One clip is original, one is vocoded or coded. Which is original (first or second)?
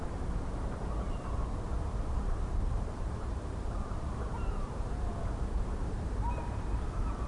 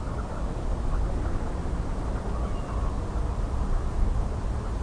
second